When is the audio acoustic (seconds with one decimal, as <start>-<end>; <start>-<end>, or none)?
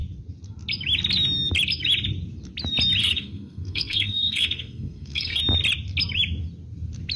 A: 0.0-3.0; 5.4-7.2